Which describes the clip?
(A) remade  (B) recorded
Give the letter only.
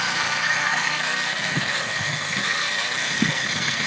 A